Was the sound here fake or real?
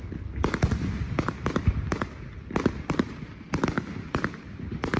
real